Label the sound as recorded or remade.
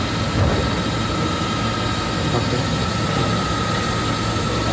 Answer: recorded